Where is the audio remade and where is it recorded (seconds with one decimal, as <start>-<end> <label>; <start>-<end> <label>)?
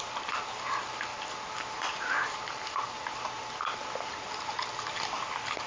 0.0-5.7 recorded